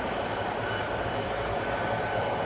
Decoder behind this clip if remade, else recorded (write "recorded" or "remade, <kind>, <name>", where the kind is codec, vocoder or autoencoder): recorded